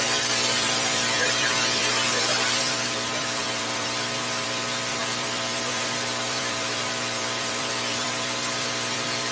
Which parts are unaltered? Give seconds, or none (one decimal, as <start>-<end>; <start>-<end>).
none